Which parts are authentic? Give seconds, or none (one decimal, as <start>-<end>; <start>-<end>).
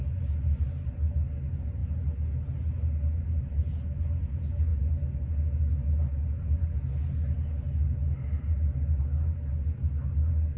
0.0-10.6